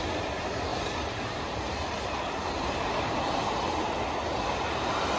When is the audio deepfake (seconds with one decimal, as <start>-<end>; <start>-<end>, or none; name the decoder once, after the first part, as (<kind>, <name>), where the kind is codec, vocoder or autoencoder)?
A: 0.7-3.8 (vocoder, BigVGAN v2)